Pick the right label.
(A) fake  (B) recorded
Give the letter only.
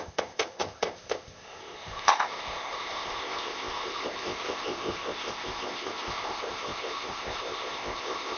A